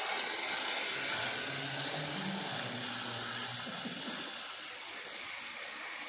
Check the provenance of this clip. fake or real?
real